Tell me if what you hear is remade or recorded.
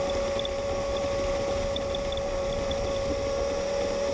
recorded